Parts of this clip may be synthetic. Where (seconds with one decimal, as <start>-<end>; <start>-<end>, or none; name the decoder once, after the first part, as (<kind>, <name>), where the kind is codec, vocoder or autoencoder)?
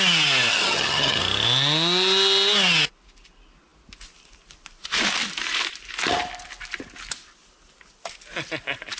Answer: 0.5-1.2 (vocoder, HiFi-GAN)